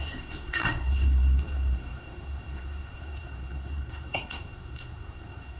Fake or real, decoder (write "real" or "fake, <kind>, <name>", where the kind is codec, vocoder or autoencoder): fake, codec, SNAC